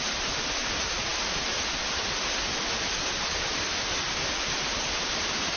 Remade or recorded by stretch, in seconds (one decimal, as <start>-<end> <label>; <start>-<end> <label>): 0.0-5.6 recorded